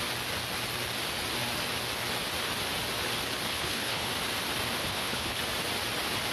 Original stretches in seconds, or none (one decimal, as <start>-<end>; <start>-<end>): 0.0-3.5; 4.1-4.8; 5.4-6.3